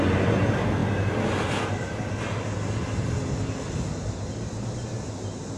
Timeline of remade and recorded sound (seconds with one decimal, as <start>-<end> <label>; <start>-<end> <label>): 0.0-5.6 recorded